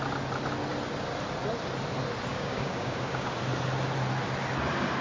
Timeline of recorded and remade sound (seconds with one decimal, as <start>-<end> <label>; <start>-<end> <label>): 0.0-2.3 recorded; 2.3-3.4 remade; 3.4-5.0 recorded